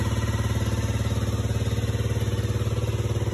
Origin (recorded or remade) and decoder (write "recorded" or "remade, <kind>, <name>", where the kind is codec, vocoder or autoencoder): recorded